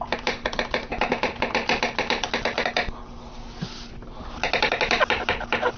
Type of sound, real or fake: real